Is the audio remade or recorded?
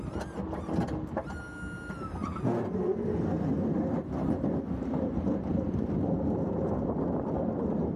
recorded